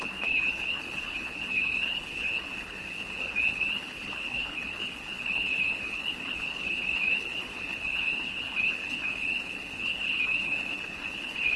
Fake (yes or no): yes